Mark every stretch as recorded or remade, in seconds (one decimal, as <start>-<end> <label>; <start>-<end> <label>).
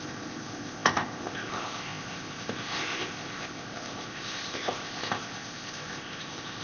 0.0-6.6 remade